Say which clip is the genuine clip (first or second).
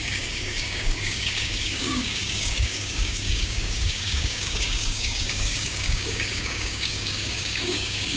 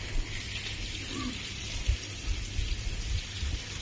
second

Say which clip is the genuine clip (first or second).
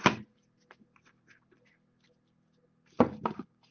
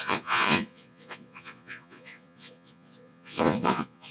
first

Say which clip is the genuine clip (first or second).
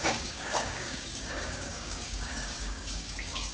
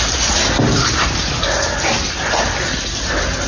second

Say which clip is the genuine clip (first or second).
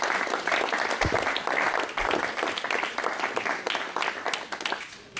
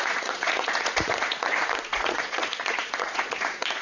first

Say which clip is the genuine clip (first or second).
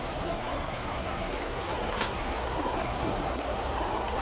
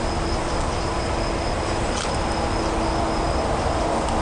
second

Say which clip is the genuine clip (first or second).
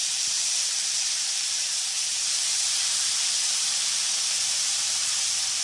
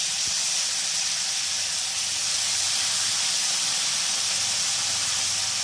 second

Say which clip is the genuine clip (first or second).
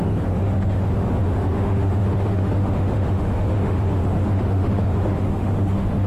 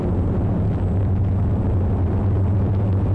second